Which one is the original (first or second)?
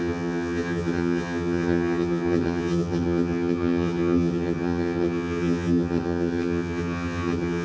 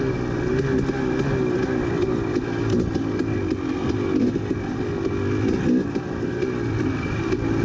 second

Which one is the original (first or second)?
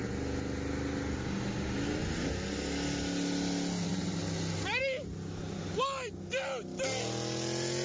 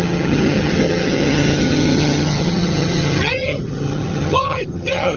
first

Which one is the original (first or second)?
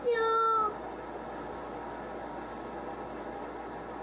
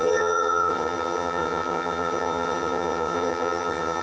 first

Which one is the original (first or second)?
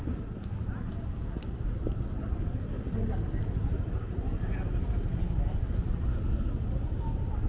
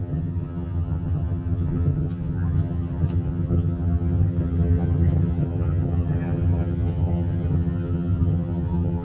first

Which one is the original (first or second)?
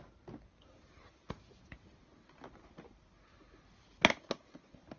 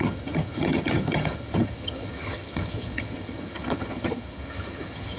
first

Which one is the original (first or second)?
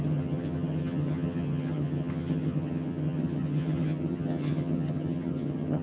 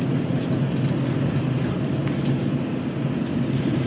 second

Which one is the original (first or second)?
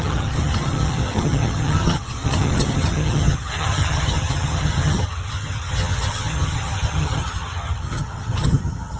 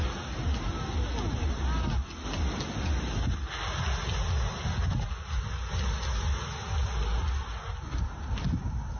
second